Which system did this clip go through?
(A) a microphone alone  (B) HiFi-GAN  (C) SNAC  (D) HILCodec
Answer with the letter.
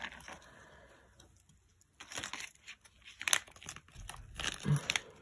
A